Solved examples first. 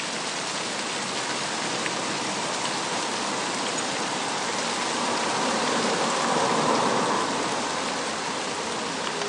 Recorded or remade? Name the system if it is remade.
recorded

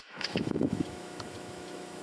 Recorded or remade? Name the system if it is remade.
remade, autoencoder, DAC-VAE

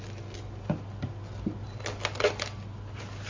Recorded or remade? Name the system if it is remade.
recorded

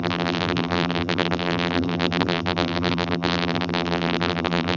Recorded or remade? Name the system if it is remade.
remade, vocoder, BigVGAN v2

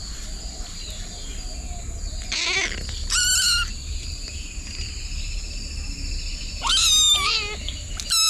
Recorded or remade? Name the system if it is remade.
recorded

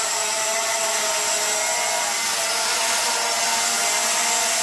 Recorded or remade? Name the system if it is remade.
recorded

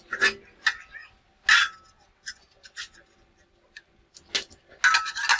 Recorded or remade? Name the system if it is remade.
recorded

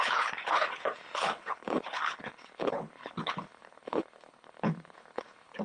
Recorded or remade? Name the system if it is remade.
remade, codec, HILCodec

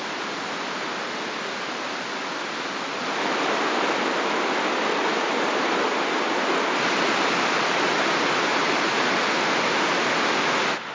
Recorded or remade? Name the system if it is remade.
recorded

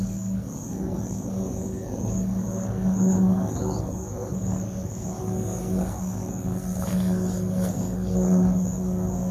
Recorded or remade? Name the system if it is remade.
remade, codec, SNAC